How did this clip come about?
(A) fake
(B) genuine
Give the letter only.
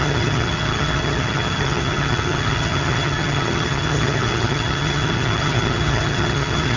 A